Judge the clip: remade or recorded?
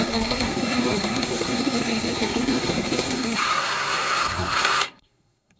remade